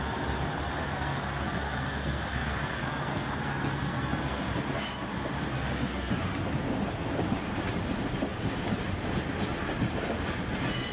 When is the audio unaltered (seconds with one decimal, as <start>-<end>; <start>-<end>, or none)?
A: 0.0-0.8; 4.4-5.5; 6.1-10.9